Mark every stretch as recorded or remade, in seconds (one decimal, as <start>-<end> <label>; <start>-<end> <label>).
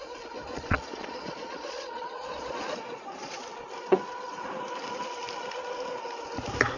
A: 0.0-0.5 recorded; 0.5-3.4 remade; 3.4-3.8 recorded; 3.8-4.4 remade; 4.4-6.8 recorded